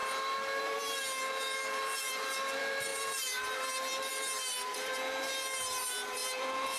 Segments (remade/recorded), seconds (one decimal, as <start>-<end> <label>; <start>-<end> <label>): 0.0-0.6 recorded; 0.6-6.8 remade